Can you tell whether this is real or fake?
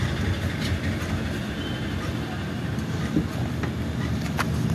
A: real